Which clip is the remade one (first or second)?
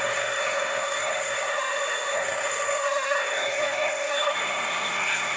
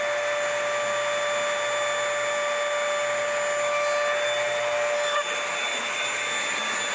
first